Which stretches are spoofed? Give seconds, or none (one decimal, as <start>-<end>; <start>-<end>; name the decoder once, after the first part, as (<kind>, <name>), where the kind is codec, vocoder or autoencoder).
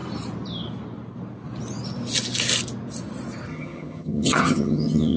3.5-5.2 (vocoder, HiFi-GAN)